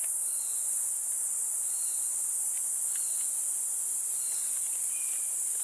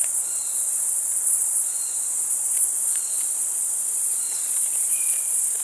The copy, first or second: second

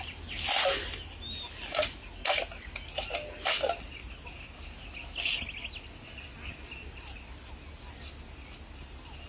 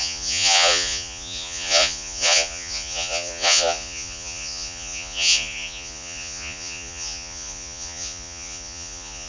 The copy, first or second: second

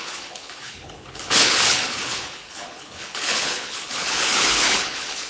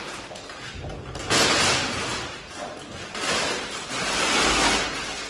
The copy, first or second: first